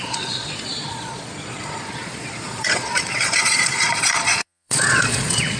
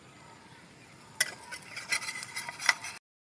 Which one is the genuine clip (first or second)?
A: second